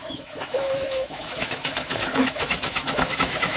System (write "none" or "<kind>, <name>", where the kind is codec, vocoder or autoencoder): autoencoder, DAC-VAE